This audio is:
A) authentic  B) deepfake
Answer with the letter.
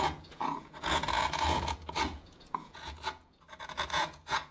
B